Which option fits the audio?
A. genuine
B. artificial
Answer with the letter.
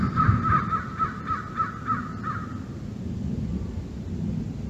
A